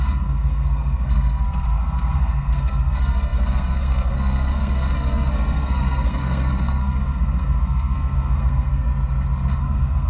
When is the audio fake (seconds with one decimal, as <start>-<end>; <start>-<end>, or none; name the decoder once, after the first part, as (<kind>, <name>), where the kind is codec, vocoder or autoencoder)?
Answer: 0.0-8.9 (codec, SNAC); 9.6-10.1